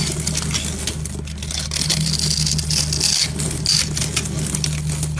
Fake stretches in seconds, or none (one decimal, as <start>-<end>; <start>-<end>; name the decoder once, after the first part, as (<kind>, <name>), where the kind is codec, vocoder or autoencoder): none